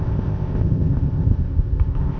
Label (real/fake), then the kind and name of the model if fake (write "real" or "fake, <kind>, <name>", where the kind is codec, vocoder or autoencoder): fake, codec, ZipCodec